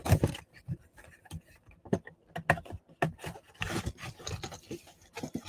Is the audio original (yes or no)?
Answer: yes